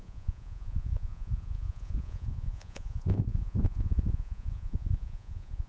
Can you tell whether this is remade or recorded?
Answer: remade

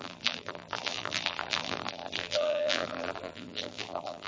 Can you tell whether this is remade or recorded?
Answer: remade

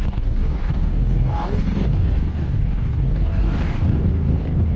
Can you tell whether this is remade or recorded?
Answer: remade